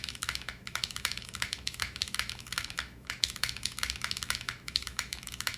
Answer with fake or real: fake